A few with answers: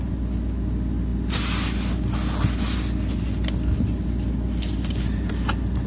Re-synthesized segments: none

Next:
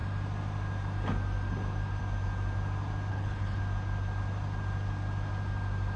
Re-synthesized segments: 3.1-3.6 (codec, HILCodec)